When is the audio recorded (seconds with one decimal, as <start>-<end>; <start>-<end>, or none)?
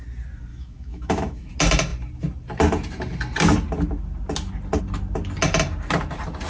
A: 0.0-0.5; 1.5-6.5